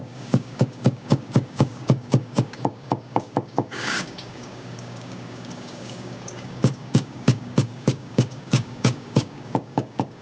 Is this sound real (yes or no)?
no